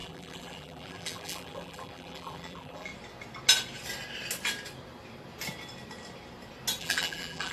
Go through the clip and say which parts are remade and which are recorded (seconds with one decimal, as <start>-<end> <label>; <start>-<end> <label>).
0.0-2.9 remade; 2.9-6.8 recorded; 6.8-7.5 remade